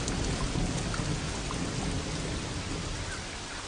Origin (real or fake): real